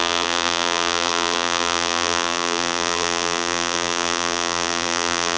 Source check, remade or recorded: remade